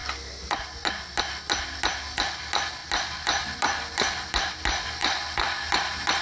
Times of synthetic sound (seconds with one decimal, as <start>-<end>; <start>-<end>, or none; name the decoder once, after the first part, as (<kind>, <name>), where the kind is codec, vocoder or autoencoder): 2.8-4.5 (vocoder, BigVGAN v2); 5.0-6.2